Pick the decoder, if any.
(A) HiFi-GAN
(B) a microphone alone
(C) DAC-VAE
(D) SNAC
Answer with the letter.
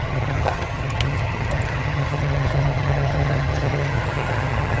A